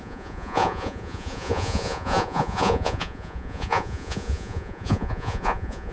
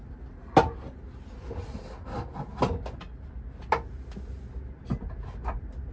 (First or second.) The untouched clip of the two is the second